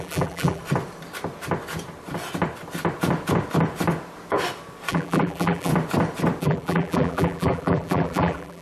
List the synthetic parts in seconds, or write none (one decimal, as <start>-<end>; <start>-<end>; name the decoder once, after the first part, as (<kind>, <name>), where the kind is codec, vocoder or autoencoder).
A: 0.0-0.6 (vocoder, BigVGAN v2); 4.9-5.7; 6.4-8.6